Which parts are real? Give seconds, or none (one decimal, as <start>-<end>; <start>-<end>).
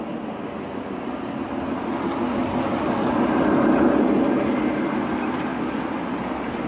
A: 0.0-6.7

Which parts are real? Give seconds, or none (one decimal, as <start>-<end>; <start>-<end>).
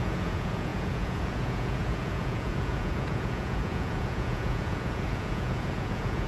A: none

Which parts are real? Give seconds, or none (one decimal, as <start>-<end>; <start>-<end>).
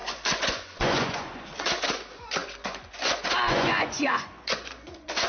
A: none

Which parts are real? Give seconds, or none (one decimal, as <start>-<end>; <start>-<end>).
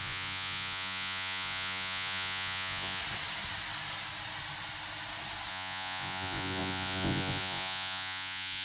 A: 3.0-5.5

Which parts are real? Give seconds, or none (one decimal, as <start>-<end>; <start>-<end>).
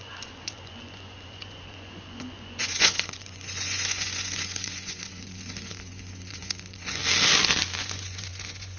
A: 7.0-7.8